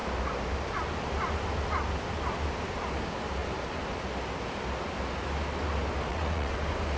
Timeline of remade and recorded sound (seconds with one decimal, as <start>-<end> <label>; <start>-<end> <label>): 0.0-6.1 recorded; 6.1-6.6 remade; 6.6-7.0 recorded